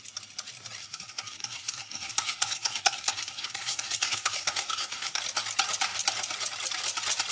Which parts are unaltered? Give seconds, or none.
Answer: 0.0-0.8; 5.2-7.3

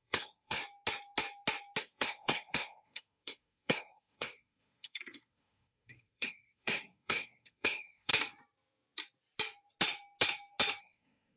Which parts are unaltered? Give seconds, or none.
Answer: 0.6-1.8; 8.1-10.8